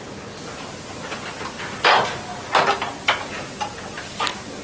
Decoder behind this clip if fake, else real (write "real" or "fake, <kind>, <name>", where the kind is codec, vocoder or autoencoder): real